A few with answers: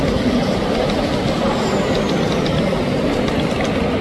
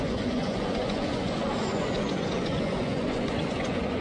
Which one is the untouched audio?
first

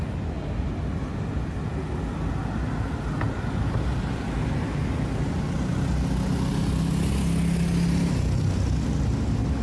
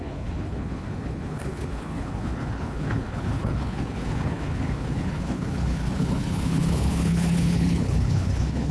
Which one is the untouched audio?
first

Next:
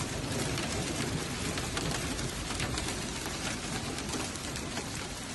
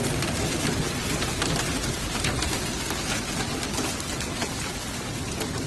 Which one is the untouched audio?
second